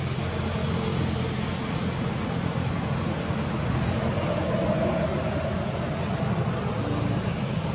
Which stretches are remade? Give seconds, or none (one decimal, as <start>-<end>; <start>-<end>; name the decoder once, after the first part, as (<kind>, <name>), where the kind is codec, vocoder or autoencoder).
none